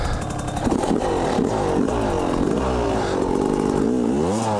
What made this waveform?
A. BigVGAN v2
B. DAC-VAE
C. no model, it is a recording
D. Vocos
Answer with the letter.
C